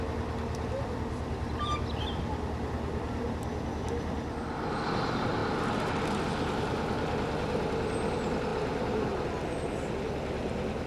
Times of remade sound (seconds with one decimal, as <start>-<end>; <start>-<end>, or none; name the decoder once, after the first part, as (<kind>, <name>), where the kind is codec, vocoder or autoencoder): none